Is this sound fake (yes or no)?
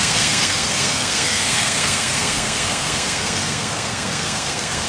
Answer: yes